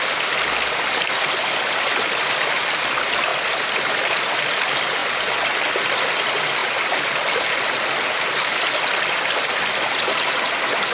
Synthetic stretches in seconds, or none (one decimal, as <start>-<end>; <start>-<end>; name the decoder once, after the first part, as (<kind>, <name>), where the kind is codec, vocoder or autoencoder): none

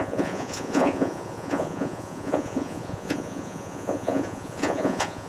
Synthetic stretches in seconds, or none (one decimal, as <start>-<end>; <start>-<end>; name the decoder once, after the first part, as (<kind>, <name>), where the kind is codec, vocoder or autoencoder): 0.0-5.3 (vocoder, Vocos)

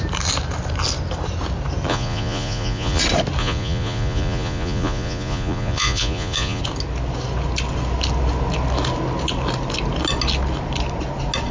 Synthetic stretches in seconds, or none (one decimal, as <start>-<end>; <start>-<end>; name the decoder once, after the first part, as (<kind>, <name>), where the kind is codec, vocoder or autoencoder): 1.9-3.0 (vocoder, Vocos); 3.4-6.6

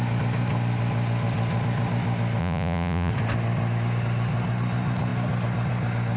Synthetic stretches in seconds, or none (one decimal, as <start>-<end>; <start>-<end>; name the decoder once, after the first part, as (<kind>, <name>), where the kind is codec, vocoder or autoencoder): 2.4-3.1 (vocoder, Vocos)